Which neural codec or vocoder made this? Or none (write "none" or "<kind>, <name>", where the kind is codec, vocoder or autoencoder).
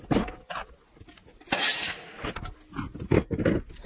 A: none